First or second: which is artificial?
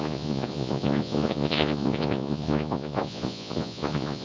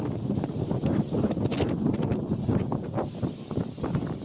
first